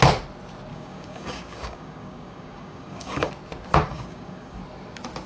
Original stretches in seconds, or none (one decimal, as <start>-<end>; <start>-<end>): 0.0-0.7; 3.3-3.9; 4.6-5.3